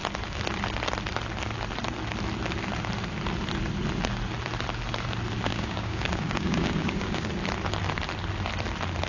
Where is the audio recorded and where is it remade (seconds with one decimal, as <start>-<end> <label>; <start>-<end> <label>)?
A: 0.0-5.5 recorded; 5.5-7.3 remade; 7.3-9.1 recorded